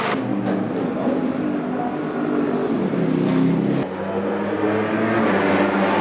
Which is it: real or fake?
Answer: real